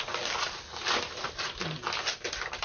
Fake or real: real